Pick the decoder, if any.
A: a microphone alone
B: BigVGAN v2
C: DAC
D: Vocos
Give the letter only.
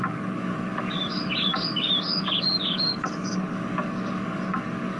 C